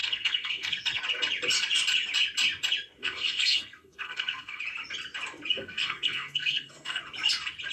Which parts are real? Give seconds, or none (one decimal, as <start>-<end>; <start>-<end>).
1.0-3.0; 4.6-5.5; 7.0-7.7